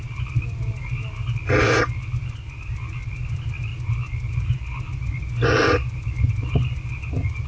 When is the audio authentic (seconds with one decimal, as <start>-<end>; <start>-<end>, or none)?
0.0-7.5